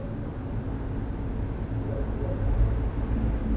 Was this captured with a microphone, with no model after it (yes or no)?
yes